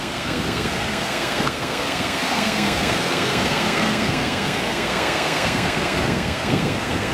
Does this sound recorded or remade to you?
remade